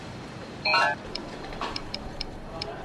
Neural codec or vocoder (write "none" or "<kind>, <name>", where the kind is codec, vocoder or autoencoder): vocoder, BigVGAN v2